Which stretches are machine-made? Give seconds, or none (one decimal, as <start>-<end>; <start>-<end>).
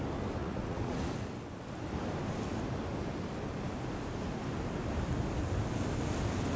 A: 0.4-1.1